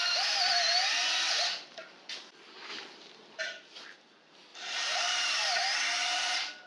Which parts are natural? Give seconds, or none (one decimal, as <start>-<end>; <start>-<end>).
0.0-2.7; 3.4-4.5; 5.6-6.7